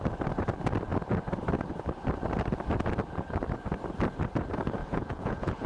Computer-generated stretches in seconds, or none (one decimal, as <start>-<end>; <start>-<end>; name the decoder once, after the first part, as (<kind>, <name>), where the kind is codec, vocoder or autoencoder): 4.8-5.7 (vocoder, Vocos)